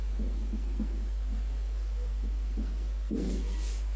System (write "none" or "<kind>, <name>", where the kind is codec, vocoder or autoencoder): codec, SNAC